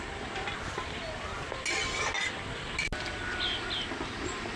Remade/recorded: recorded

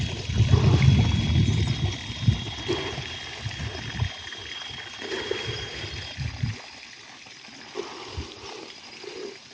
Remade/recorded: recorded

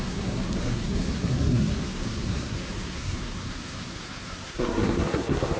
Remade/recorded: remade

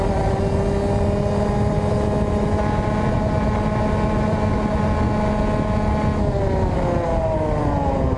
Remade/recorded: recorded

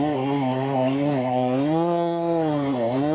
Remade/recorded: remade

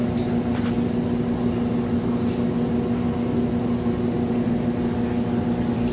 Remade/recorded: recorded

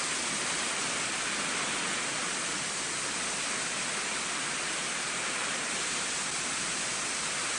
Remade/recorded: recorded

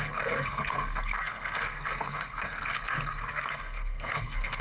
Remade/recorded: remade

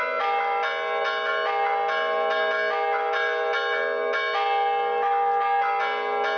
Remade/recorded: recorded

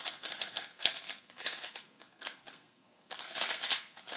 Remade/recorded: remade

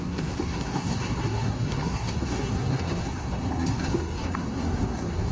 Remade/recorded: remade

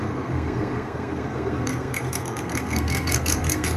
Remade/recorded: remade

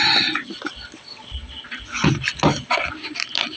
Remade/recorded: recorded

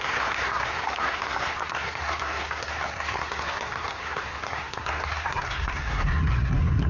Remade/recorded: remade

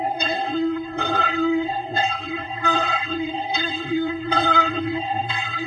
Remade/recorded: remade